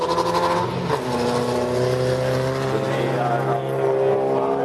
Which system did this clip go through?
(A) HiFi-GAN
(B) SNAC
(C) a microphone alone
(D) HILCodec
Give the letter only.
C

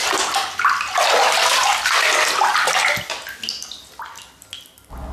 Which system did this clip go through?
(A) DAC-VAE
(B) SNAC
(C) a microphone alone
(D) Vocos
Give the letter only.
C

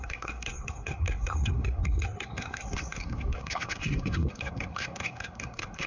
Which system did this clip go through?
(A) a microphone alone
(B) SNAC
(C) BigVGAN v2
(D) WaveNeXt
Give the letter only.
B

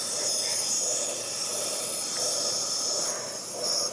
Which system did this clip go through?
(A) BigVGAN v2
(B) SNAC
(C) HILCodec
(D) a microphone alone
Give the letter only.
D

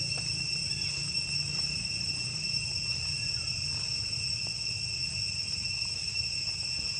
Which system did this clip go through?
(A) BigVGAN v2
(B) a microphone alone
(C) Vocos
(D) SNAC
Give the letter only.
B